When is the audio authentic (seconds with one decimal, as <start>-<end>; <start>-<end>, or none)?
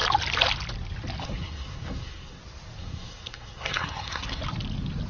0.0-1.2; 2.4-2.8; 4.4-5.1